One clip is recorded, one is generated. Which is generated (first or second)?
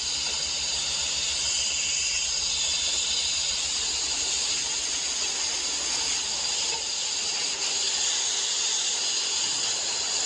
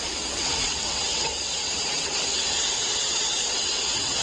second